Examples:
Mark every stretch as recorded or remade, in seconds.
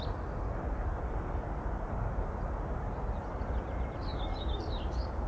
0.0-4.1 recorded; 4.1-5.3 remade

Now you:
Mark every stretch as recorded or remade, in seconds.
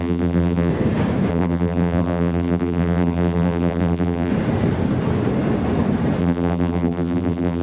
0.0-0.7 remade; 0.7-1.3 recorded; 1.3-4.3 remade; 4.3-6.2 recorded; 6.2-7.6 remade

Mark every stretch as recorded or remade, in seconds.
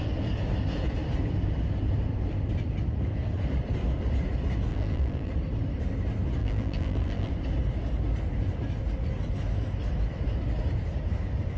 0.0-4.7 recorded; 4.7-5.3 remade; 5.3-6.4 recorded; 6.4-7.3 remade; 7.3-11.6 recorded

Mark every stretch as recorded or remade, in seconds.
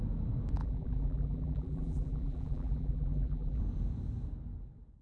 0.0-0.6 recorded; 0.6-3.6 remade; 3.6-5.0 recorded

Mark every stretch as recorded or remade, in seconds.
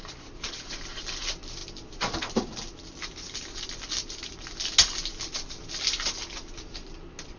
0.0-0.7 remade; 0.7-7.4 recorded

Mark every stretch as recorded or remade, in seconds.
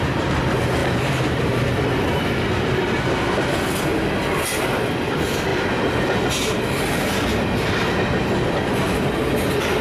0.0-0.8 recorded; 0.8-1.7 remade; 1.7-9.8 recorded